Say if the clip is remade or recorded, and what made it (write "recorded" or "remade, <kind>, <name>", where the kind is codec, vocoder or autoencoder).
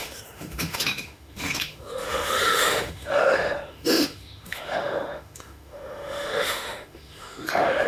remade, autoencoder, DAC-VAE